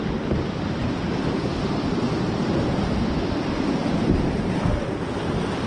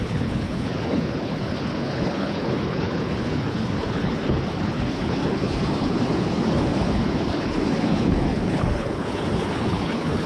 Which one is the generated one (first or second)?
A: second